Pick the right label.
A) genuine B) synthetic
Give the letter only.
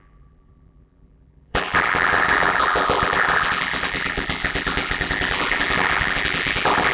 B